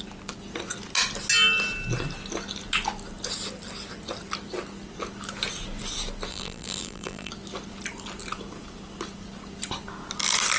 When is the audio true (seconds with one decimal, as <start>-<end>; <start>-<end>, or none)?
0.0-6.3; 7.3-10.6

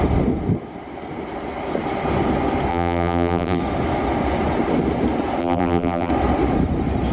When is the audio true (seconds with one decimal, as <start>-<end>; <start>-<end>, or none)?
0.0-2.7; 3.6-5.4; 6.1-7.1